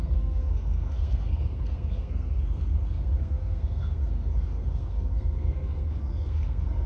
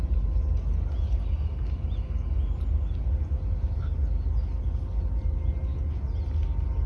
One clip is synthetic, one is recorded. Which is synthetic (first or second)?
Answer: first